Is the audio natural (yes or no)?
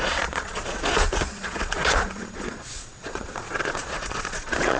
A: no